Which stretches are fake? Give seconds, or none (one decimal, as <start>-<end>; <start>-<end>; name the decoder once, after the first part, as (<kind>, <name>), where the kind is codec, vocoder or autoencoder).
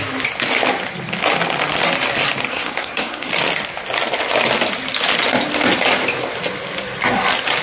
2.5-3.3 (codec, SNAC)